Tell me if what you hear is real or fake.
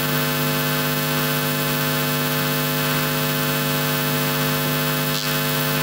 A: real